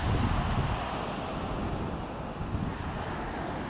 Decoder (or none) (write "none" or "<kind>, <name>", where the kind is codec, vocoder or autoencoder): none